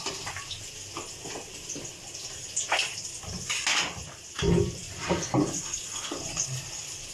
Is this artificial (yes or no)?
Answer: no